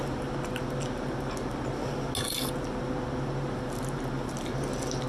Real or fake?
real